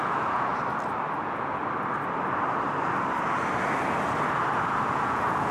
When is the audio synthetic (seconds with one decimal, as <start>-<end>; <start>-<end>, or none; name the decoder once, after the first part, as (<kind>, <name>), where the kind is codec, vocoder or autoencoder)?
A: 0.0-0.5 (vocoder, Vocos); 1.2-1.6; 4.9-5.5